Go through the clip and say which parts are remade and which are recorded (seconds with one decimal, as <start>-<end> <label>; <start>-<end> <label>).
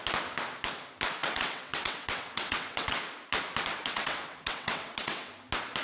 0.0-1.2 recorded; 1.2-3.0 remade; 3.0-3.7 recorded; 3.7-5.3 remade; 5.3-5.8 recorded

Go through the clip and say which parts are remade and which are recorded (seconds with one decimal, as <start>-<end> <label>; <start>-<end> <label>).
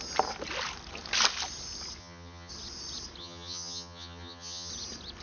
0.0-2.0 recorded; 2.0-2.5 remade; 2.5-3.2 recorded; 3.2-4.7 remade; 4.7-5.2 recorded